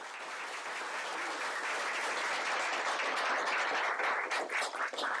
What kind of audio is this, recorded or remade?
recorded